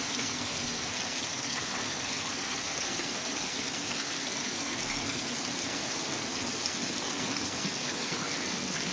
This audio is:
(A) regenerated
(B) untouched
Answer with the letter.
A